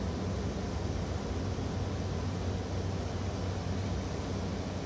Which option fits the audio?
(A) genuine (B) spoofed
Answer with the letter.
A